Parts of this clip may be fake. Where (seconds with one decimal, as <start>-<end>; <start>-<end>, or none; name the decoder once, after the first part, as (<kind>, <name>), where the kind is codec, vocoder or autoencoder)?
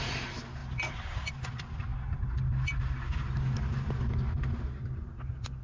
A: 0.6-1.3 (vocoder, BigVGAN v2)